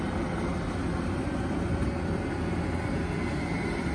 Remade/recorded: recorded